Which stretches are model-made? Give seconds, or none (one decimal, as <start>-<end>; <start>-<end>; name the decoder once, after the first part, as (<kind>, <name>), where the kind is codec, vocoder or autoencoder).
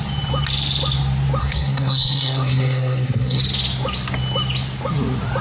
1.4-3.4 (codec, SNAC)